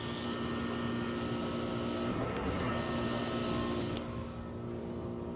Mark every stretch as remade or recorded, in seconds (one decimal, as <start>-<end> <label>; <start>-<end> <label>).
0.0-2.1 recorded; 2.1-2.7 remade; 2.7-5.4 recorded